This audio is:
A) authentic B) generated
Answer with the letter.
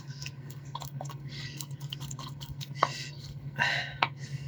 B